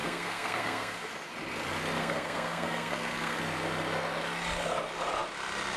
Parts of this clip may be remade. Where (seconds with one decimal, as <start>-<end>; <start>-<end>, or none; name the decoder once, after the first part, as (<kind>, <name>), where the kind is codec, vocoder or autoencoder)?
0.0-1.1 (codec, SNAC); 2.0-3.4